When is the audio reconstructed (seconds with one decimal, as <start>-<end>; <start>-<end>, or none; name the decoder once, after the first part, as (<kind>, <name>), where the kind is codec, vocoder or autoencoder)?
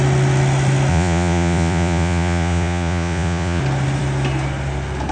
0.9-3.6 (vocoder, Vocos)